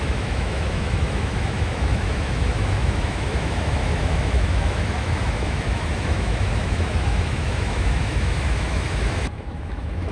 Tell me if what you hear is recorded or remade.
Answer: remade